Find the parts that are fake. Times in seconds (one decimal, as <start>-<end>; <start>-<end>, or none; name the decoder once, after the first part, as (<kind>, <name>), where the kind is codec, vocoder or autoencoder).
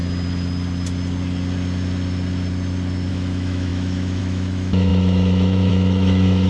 3.1-6.5 (autoencoder, DAC-VAE)